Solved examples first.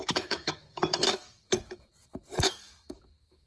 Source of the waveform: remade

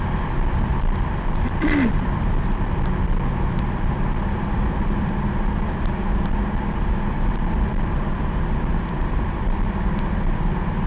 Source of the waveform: remade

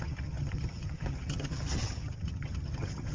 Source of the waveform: remade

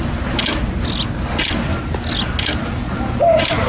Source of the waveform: recorded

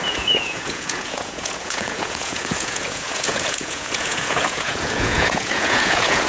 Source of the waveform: remade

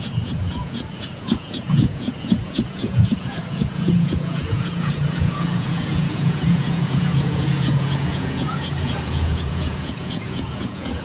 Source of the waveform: remade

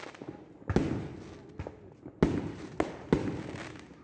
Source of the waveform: recorded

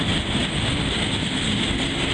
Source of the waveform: recorded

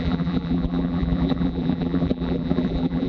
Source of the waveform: remade